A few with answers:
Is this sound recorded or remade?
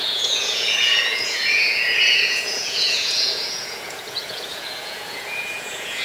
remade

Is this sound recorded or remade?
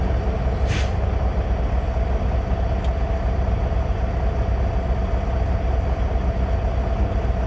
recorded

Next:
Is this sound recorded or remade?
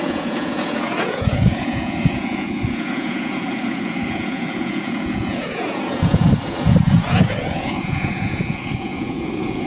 remade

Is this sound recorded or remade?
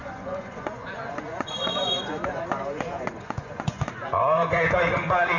remade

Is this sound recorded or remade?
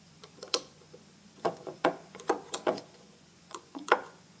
remade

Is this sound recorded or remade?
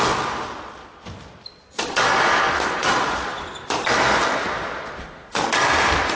recorded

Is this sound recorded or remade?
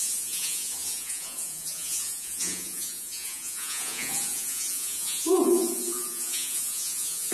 remade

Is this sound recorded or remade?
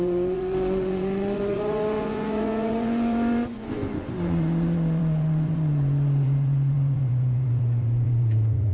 remade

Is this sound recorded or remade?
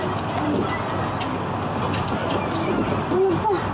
recorded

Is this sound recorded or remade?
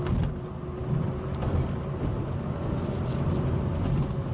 recorded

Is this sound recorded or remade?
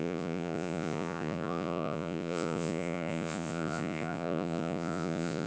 remade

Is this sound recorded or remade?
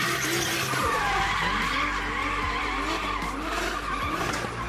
recorded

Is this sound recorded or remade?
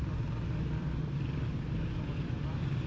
recorded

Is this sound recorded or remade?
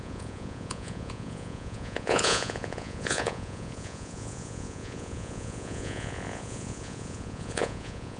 remade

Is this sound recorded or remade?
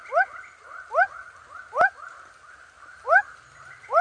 recorded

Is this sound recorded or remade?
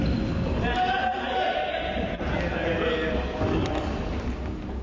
recorded